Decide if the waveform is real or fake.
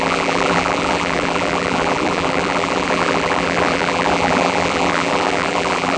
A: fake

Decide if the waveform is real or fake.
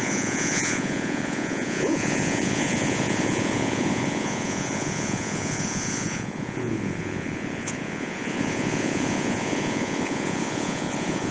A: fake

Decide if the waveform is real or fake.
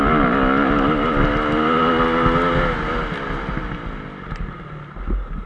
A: real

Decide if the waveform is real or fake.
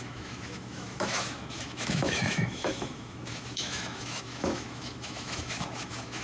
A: fake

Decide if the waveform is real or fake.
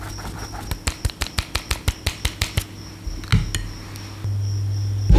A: real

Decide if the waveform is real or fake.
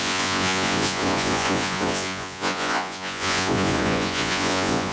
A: fake